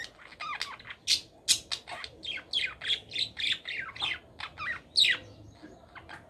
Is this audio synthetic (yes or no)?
no